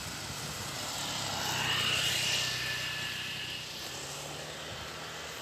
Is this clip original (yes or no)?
yes